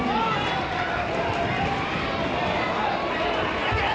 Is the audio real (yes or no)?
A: yes